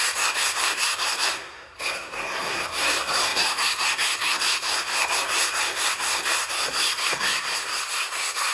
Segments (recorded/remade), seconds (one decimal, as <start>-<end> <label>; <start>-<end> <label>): 0.0-8.5 remade